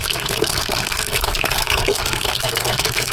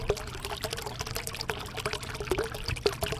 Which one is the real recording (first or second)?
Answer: second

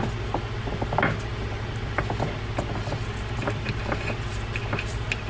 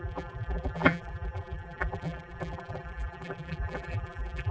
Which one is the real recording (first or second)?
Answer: first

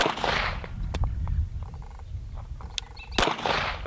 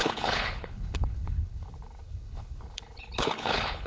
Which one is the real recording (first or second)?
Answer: first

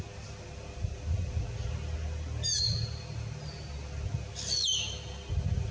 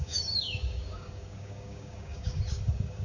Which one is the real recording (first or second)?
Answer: first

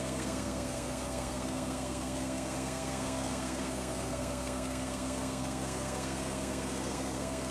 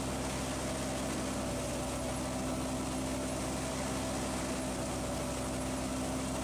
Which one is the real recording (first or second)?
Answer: second